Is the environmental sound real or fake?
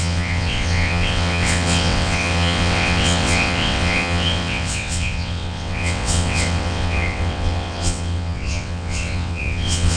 fake